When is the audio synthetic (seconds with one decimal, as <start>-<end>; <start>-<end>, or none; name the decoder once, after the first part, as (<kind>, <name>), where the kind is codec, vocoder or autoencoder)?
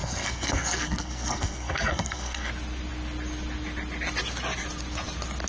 0.0-2.5 (codec, SNAC)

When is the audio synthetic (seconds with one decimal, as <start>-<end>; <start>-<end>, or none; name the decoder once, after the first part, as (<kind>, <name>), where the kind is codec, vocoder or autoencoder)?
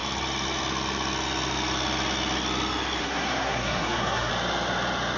3.0-4.3 (codec, SNAC)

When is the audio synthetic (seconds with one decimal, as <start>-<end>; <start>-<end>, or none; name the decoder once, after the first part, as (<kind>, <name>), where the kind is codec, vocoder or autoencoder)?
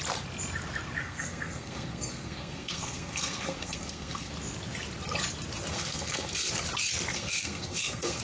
1.0-4.3 (codec, SNAC); 5.7-6.5; 7.1-8.2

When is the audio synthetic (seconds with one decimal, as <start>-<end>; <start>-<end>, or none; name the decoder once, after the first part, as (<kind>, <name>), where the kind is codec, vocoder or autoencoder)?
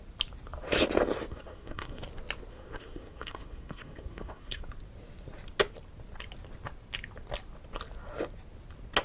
1.3-2.0 (codec, SNAC); 2.5-4.6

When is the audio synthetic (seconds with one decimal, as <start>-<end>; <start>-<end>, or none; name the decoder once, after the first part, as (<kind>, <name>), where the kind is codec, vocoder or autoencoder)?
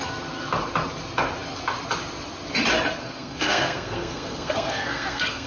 3.0-5.5 (codec, SNAC)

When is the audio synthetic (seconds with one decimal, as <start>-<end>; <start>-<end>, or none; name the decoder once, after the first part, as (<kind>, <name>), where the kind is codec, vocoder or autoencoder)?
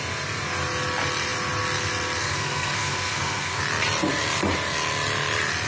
2.2-3.6 (codec, SNAC)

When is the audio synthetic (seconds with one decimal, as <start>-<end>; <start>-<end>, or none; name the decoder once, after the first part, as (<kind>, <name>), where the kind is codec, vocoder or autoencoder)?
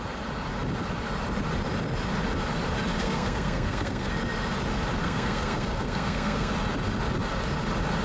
3.0-4.1 (codec, SNAC); 5.0-6.5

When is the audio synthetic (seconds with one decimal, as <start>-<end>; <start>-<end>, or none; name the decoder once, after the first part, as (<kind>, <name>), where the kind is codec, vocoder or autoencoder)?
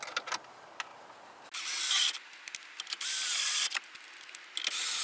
none